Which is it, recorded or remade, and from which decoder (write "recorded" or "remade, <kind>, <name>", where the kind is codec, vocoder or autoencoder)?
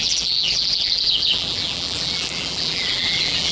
remade, vocoder, BigVGAN v2